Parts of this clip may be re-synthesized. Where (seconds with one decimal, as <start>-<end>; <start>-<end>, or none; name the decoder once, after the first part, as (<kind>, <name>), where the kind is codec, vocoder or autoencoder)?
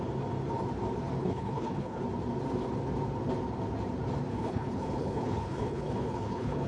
1.2-2.0 (codec, HILCodec); 4.3-6.7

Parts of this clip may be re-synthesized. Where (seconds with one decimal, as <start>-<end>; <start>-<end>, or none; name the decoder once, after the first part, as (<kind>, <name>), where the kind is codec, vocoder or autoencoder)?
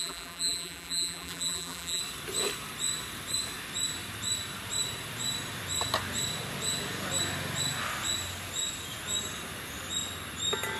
0.0-2.0 (vocoder, BigVGAN v2)